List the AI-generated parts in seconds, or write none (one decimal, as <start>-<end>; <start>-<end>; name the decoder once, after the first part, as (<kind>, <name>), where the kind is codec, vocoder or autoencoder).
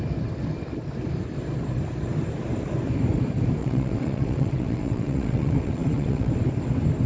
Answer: 3.6-6.3 (vocoder, WaveNeXt)